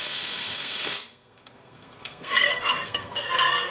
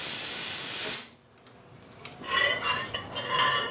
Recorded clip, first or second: second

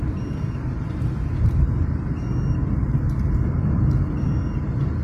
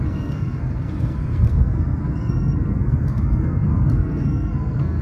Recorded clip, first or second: first